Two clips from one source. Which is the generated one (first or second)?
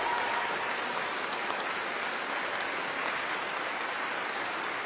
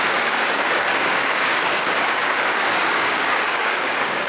second